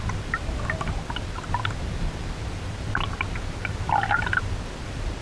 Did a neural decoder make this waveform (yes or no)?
no